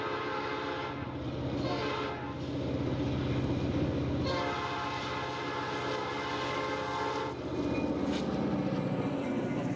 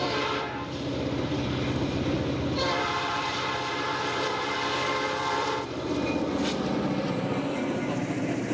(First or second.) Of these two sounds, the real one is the first